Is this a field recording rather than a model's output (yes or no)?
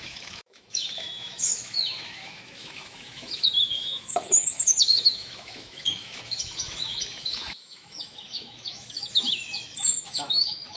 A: no